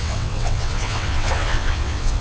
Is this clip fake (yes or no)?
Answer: yes